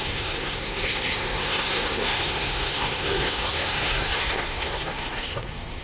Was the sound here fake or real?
fake